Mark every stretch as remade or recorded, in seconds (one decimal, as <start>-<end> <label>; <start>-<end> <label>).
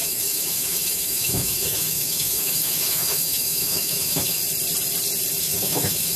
0.0-4.4 remade; 4.4-5.4 recorded; 5.4-6.2 remade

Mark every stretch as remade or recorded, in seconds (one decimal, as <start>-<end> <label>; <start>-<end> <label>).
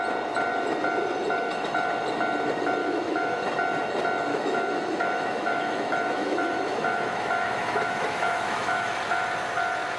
0.0-2.8 recorded; 2.8-3.4 remade; 3.4-4.3 recorded; 4.3-8.9 remade; 8.9-10.0 recorded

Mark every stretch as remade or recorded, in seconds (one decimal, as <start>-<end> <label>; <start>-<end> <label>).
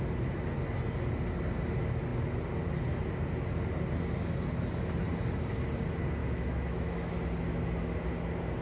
0.0-6.2 recorded; 6.2-7.1 remade; 7.1-8.6 recorded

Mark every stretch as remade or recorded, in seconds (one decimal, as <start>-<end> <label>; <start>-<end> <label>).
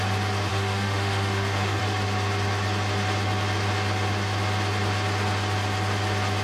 0.0-0.5 recorded; 0.5-1.8 remade; 1.8-6.4 recorded